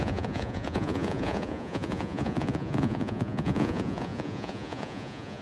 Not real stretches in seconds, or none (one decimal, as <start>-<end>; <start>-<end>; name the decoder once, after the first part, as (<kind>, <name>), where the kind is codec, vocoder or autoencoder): 0.0-5.4 (vocoder, Vocos)